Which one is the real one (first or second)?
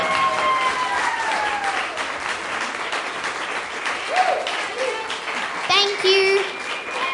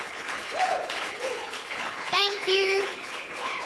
first